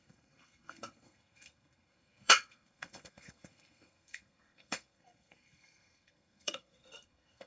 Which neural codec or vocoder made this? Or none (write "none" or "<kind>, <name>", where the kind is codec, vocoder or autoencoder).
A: codec, SNAC